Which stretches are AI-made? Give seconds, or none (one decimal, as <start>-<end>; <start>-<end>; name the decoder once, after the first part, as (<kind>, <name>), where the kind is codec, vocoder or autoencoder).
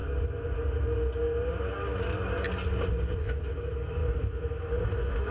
3.2-5.3 (autoencoder, DAC-VAE)